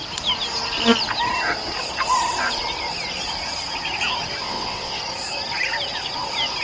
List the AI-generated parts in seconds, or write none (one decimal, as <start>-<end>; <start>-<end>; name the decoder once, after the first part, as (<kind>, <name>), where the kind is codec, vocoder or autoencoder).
4.4-5.0 (vocoder, WaveNeXt)